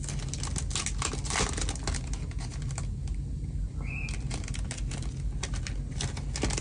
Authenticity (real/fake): real